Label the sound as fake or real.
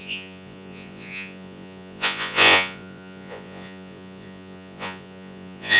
fake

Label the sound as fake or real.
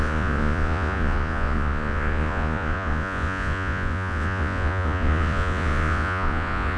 fake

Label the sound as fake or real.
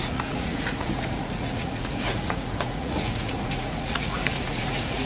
fake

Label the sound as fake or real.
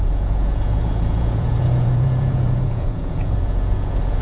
fake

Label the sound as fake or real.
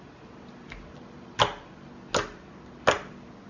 real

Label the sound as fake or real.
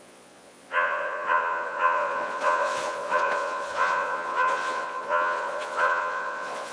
fake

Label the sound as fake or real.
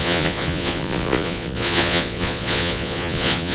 fake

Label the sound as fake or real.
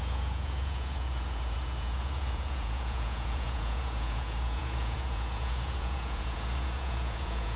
fake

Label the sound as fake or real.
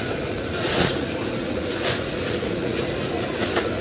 fake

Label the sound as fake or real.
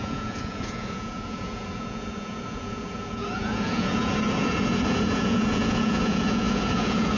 fake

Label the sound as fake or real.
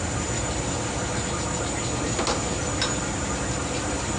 real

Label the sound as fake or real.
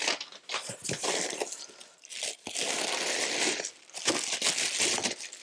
real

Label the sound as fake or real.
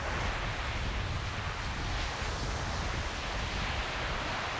real